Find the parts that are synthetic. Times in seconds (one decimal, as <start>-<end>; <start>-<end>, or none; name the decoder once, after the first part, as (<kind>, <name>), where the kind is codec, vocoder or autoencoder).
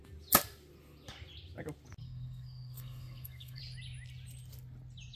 2.0-3.6 (codec, SNAC)